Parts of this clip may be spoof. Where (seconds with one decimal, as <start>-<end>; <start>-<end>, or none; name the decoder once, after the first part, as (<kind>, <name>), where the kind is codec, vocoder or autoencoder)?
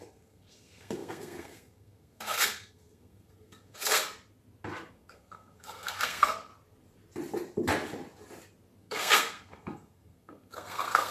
0.0-4.0 (codec, SNAC); 4.9-6.5; 8.8-11.1